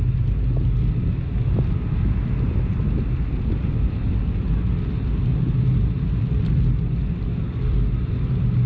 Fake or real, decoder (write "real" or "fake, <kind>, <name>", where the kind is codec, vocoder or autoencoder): real